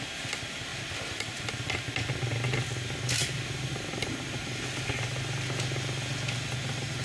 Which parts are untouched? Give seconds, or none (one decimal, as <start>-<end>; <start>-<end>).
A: 0.0-7.0